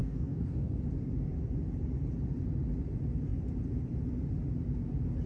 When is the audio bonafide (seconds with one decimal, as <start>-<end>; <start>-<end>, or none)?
0.8-5.3

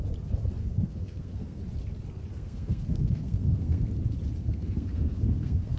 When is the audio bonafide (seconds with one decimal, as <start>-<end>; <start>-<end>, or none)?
0.0-0.6; 1.6-2.3; 3.9-4.4

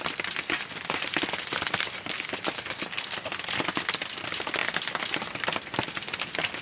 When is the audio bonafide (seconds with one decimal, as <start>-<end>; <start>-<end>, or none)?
0.0-6.6

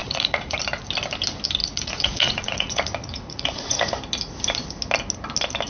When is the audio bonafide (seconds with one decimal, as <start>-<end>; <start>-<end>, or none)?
0.6-1.6; 3.9-5.7

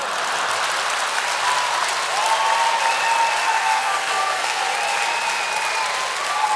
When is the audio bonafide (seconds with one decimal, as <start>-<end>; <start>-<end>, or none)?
0.0-3.6; 4.6-6.6

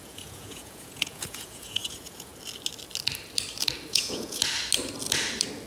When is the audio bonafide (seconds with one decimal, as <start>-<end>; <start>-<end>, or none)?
2.3-3.9; 4.4-5.7

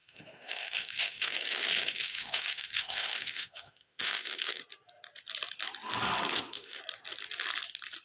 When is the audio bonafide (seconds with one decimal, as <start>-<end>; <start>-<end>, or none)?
4.6-6.3; 6.8-8.0

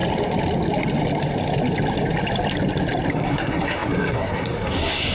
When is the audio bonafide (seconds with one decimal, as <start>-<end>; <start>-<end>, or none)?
0.0-3.1